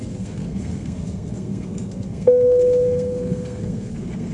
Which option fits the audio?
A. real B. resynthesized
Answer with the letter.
B